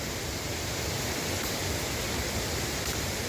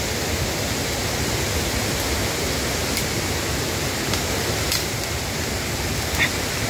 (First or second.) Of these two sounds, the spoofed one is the first